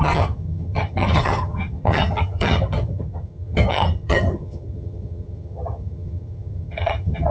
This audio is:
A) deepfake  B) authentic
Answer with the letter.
A